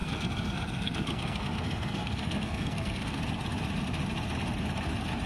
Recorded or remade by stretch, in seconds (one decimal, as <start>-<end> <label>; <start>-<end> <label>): 0.0-3.2 remade; 3.2-5.3 recorded